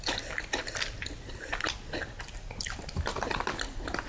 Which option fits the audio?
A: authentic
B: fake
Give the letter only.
A